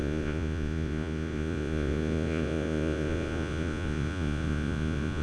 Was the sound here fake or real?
fake